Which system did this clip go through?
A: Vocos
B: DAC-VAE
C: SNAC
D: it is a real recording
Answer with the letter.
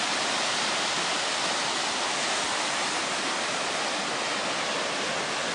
D